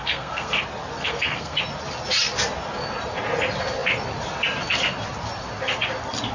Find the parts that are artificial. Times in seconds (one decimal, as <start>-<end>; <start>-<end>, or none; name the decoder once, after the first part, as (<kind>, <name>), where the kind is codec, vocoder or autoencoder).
0.0-0.6 (codec, SNAC); 1.0-1.6